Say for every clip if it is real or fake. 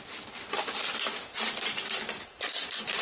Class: real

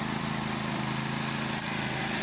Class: fake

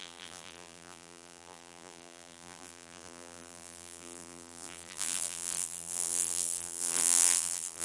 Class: fake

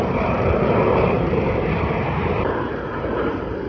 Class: fake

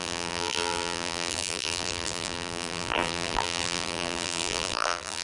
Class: fake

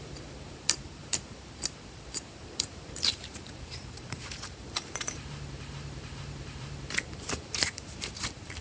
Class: fake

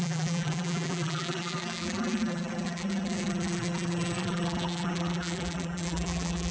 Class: fake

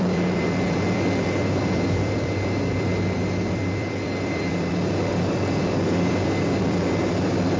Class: fake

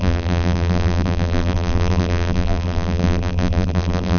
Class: fake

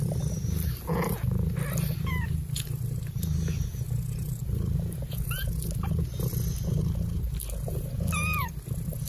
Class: real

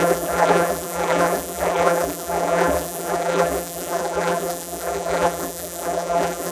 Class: fake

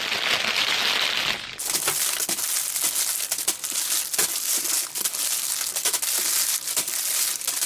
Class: real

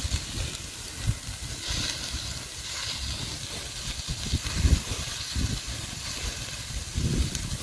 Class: real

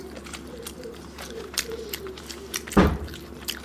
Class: fake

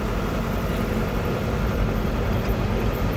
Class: fake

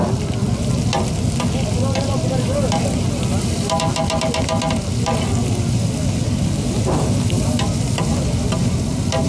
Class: real